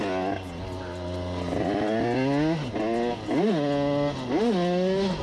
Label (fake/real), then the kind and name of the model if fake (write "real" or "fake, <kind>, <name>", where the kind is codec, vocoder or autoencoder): real